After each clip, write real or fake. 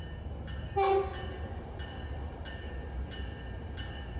real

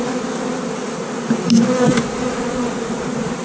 real